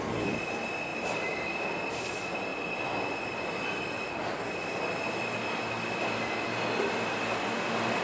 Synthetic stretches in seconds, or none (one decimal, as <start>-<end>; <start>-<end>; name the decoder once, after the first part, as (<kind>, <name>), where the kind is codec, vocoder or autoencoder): none